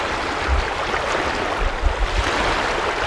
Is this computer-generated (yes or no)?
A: no